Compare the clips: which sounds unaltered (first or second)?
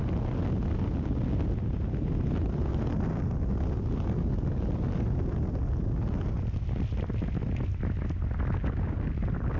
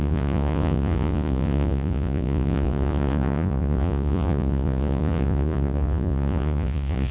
first